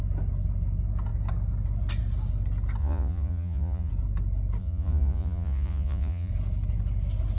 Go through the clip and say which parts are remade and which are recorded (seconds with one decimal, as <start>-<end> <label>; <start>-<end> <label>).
0.0-2.8 recorded; 2.8-3.9 remade; 3.9-4.6 recorded; 4.6-6.3 remade; 6.3-7.4 recorded